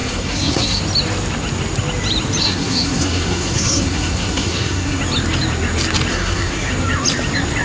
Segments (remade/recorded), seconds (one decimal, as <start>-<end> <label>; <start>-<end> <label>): 0.0-0.8 remade; 0.8-2.4 recorded; 2.4-5.0 remade; 5.0-6.1 recorded; 6.1-6.7 remade; 6.7-7.6 recorded